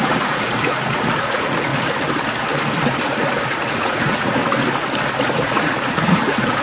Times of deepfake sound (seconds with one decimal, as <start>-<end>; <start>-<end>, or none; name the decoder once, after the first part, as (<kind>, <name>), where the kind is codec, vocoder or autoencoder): 0.0-1.7 (vocoder, Vocos); 3.5-4.4; 5.3-6.6